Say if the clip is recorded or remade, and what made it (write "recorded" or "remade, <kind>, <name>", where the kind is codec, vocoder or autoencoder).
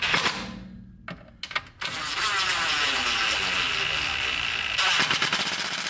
recorded